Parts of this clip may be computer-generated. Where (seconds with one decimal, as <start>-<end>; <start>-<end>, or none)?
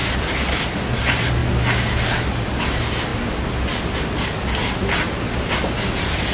none